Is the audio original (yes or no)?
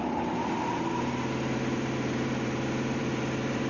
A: no